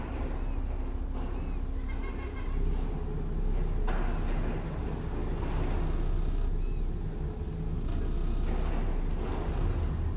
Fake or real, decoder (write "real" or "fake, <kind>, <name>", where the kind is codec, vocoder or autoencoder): real